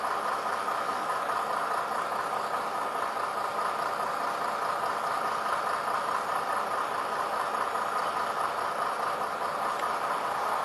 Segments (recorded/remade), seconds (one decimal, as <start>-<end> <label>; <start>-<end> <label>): 0.0-0.6 recorded; 0.6-1.2 remade; 1.2-10.6 recorded